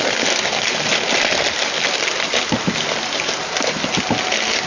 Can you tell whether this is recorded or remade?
recorded